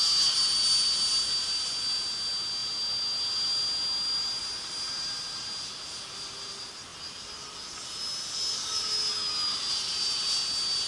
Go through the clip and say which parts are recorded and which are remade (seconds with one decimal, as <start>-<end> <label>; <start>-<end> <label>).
0.0-10.9 recorded